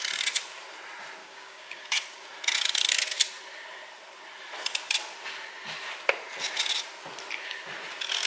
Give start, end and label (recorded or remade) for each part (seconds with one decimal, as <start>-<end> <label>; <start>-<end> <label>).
0.0-1.2 recorded; 1.2-1.8 remade; 1.8-8.3 recorded

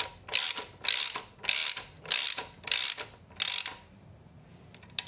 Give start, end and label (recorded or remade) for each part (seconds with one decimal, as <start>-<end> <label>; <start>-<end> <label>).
0.0-5.1 recorded

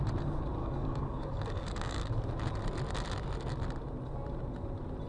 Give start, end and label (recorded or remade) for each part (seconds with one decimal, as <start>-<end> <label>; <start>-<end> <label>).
0.0-0.6 recorded; 0.6-2.1 remade; 2.1-5.1 recorded